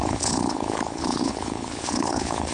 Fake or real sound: fake